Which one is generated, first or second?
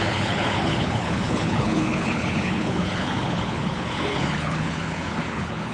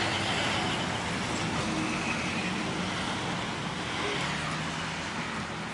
first